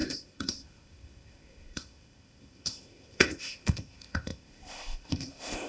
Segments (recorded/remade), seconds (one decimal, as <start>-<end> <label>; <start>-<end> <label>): 0.0-5.7 remade